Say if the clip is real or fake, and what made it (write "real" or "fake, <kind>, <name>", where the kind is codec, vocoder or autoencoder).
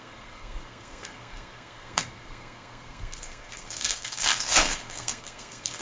fake, codec, SNAC